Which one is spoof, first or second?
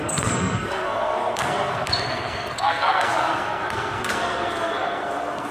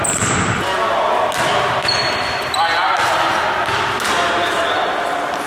first